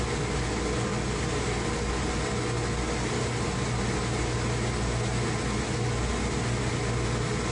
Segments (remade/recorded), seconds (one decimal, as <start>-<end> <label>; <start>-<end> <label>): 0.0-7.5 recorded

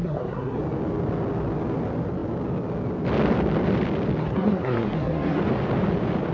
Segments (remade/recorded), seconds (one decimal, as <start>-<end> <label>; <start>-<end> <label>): 0.0-0.6 remade; 0.6-4.2 recorded; 4.2-5.4 remade; 5.4-6.3 recorded

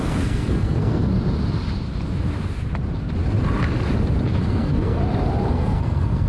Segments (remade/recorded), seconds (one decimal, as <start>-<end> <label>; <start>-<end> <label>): 0.0-1.1 remade; 1.1-4.4 recorded; 4.4-5.0 remade; 5.0-5.5 recorded; 5.5-6.3 remade

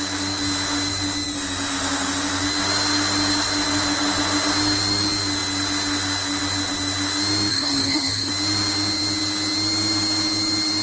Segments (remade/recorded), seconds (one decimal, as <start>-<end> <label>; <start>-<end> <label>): 0.0-7.5 recorded; 7.5-8.3 remade; 8.3-10.8 recorded

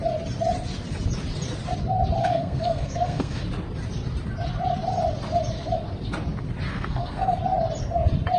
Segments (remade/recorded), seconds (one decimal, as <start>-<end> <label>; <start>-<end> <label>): 0.0-2.2 recorded; 2.2-3.4 remade; 3.4-6.7 recorded; 6.7-7.4 remade; 7.4-8.4 recorded